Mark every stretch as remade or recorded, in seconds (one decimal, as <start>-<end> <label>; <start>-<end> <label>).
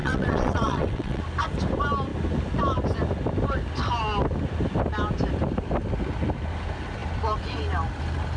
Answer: 0.0-1.2 remade; 1.2-8.4 recorded